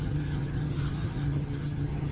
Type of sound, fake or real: fake